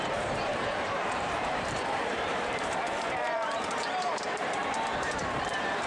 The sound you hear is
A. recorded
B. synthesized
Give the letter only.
B